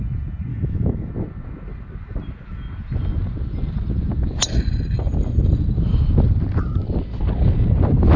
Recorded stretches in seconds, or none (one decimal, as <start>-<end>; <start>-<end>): 0.0-0.5; 1.1-8.2